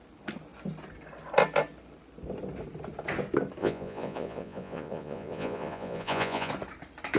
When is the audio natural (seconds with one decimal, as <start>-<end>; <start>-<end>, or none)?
0.0-3.6; 6.5-7.2